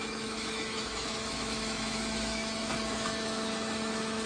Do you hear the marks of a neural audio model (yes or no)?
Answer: yes